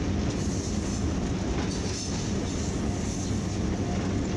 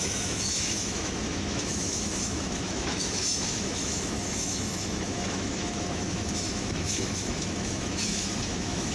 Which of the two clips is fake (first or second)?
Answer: second